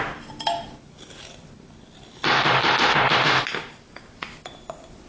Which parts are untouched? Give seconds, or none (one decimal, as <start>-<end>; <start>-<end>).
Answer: 0.0-5.1